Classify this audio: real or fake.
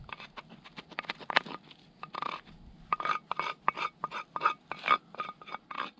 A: real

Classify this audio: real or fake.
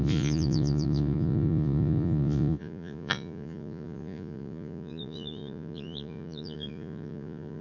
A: fake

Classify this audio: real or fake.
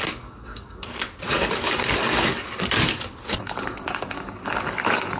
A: fake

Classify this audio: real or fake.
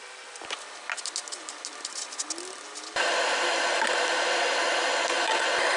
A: real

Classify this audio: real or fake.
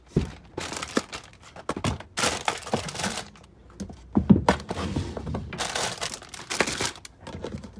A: real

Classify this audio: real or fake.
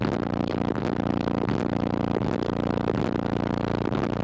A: real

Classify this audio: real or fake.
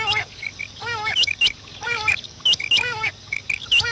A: fake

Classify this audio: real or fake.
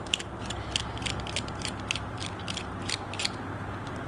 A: real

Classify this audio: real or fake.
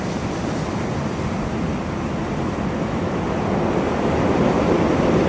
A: real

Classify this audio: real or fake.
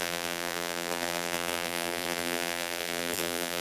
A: fake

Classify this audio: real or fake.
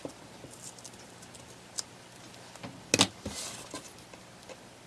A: real